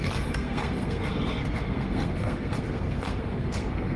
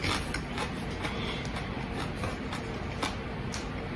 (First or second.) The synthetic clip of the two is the first